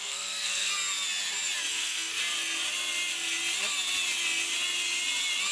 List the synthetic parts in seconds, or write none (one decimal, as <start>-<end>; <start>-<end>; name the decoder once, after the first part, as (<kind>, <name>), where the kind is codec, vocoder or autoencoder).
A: 0.0-0.7 (codec, SNAC); 1.7-2.2